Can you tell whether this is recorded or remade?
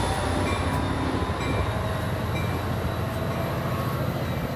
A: recorded